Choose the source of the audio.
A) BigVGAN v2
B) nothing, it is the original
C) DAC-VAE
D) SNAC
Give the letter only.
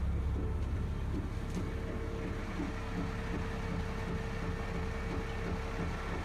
B